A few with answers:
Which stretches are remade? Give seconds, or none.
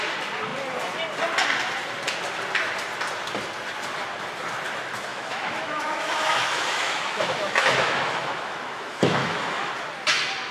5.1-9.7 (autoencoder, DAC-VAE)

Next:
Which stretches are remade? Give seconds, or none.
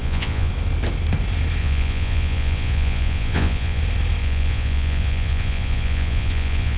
0.0-0.5 (vocoder, Vocos); 1.6-3.8; 4.2-6.8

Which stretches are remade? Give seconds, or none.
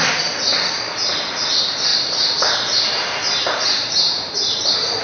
0.5-1.5 (vocoder, BigVGAN v2); 1.9-4.6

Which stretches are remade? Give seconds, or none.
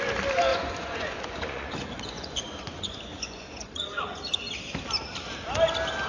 0.5-4.2 (vocoder, Vocos)